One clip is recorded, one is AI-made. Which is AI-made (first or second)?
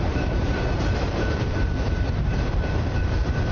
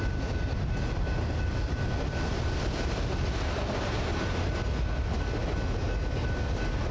first